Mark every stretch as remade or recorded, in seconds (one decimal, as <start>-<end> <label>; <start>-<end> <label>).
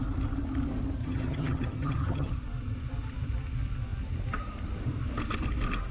0.0-1.0 recorded; 1.0-2.3 remade; 2.3-5.9 recorded